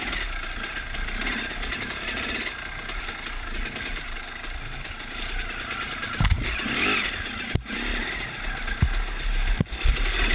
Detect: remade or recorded recorded